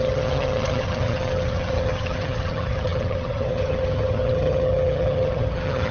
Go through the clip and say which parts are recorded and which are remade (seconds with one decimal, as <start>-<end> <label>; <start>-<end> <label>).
0.0-5.9 remade